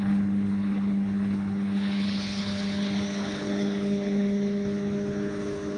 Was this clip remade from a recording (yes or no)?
yes